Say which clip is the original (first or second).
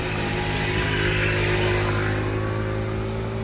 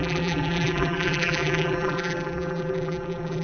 first